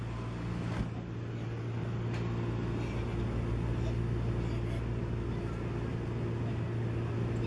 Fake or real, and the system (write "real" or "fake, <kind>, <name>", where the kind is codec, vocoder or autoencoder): real